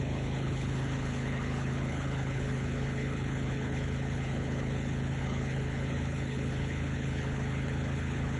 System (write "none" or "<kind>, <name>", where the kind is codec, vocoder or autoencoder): codec, HILCodec